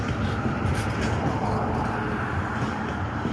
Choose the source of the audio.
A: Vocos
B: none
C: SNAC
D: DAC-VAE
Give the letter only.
B